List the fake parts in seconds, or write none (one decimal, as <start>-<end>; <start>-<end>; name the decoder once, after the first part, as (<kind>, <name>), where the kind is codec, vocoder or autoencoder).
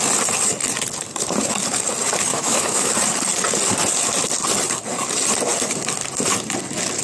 2.3-2.9 (autoencoder, DAC-VAE)